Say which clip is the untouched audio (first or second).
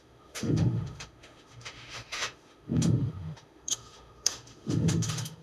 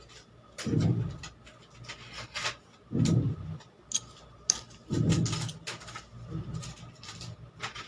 second